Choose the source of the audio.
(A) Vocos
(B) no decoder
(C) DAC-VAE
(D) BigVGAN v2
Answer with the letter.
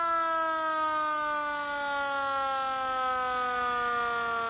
B